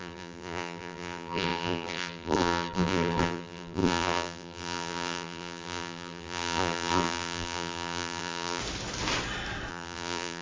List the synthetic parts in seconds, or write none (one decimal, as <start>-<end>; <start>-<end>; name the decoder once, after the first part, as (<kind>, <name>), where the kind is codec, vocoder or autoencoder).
0.0-8.6 (vocoder, BigVGAN v2); 9.7-10.4